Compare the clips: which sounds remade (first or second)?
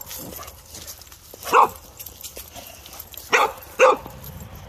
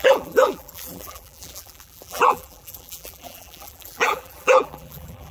second